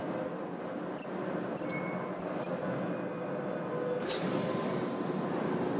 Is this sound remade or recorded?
recorded